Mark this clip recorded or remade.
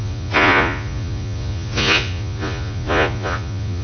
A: remade